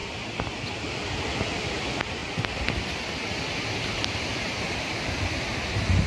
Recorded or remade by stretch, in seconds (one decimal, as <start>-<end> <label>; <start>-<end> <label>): 0.0-6.1 recorded